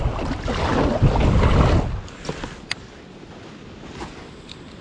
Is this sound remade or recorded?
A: recorded